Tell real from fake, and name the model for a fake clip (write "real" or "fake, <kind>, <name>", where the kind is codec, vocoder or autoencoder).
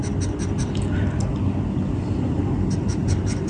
real